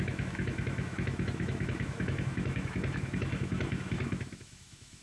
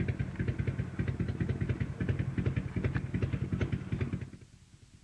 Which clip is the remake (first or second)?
first